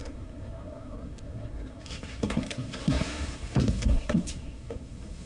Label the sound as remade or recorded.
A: remade